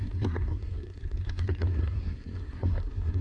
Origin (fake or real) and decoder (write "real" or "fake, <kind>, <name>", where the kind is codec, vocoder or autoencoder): fake, codec, SNAC